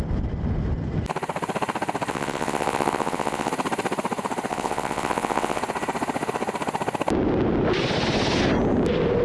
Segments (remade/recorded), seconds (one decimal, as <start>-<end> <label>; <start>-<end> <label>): 0.0-2.1 recorded; 2.1-3.5 remade; 3.5-4.5 recorded; 4.5-5.6 remade; 5.6-9.2 recorded